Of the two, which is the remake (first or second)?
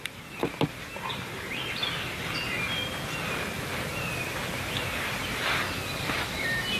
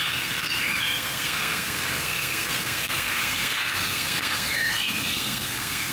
second